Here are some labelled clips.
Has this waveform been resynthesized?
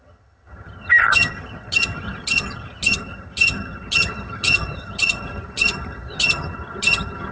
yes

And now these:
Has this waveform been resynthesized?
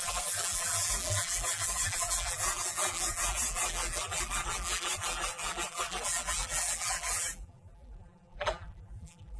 yes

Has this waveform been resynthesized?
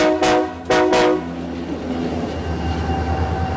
no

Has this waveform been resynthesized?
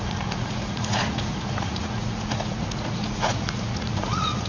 yes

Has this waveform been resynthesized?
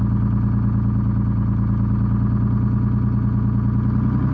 no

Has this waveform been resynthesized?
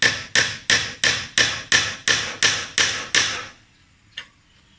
no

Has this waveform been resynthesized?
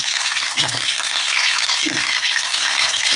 yes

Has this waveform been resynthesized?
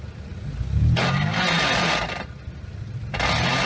no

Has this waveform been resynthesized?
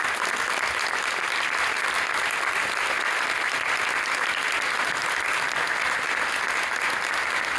no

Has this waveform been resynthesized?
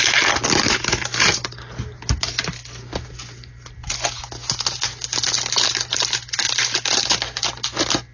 no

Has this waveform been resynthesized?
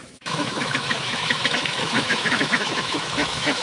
yes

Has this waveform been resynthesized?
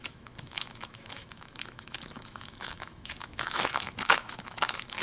yes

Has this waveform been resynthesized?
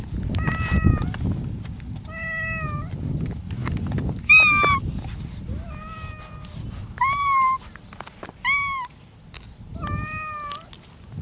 no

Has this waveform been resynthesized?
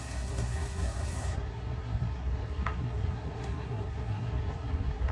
yes